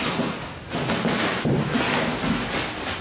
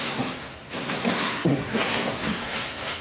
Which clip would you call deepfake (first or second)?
second